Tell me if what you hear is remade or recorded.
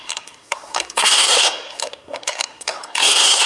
remade